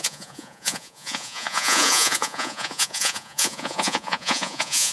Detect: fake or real fake